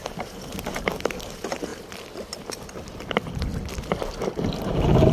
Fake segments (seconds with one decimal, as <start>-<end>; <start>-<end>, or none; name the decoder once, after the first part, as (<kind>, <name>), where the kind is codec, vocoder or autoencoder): none